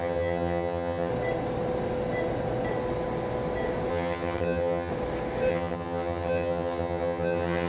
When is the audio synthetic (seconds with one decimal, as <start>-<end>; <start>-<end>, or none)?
0.0-1.1; 3.9-4.9; 5.5-7.7